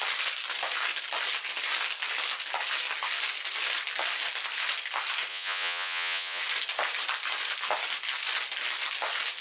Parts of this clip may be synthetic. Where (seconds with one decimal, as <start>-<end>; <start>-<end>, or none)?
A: 5.3-6.4